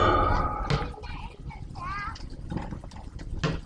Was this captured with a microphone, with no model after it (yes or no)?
yes